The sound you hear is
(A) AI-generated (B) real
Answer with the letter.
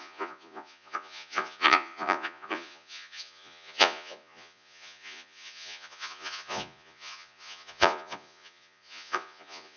A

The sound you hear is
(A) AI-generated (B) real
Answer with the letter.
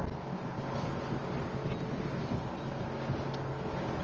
B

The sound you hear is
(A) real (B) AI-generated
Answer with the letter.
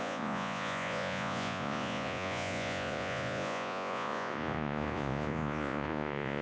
B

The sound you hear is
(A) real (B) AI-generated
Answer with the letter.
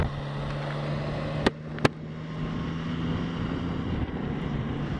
A